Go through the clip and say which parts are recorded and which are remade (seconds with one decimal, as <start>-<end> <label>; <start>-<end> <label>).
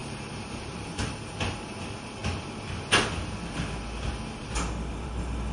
0.0-2.2 remade; 2.2-4.9 recorded; 4.9-5.5 remade